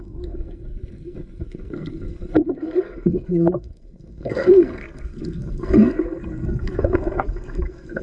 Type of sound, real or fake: fake